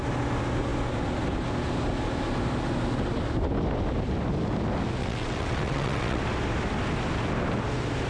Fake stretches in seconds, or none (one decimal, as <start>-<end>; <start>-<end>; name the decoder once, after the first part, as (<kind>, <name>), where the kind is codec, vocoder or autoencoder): 5.0-6.2 (vocoder, WaveNeXt)